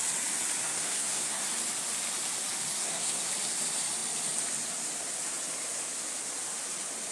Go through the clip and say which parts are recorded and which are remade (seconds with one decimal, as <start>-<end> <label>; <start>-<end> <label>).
0.0-0.6 recorded; 0.6-1.5 remade; 1.5-2.7 recorded; 2.7-3.3 remade; 3.3-7.1 recorded